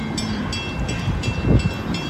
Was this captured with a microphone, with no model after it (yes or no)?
yes